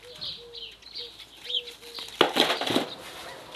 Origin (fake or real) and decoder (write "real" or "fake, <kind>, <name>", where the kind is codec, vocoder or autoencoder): real